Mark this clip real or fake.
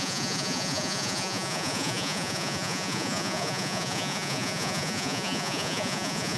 fake